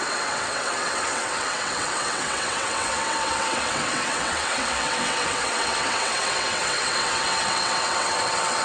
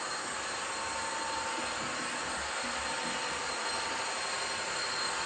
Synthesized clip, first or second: first